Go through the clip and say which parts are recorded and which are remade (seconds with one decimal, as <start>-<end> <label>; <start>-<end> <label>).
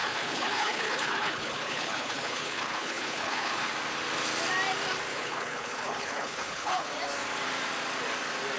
0.0-3.7 remade; 3.7-5.1 recorded; 5.1-6.9 remade; 6.9-8.6 recorded